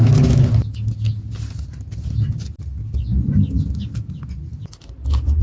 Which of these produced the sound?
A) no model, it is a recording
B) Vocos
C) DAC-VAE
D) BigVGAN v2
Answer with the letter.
A